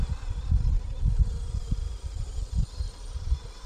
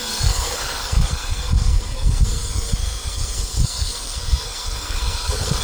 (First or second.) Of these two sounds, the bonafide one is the first